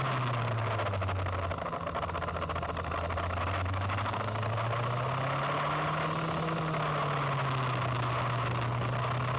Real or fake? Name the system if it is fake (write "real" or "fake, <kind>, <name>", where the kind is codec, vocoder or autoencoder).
real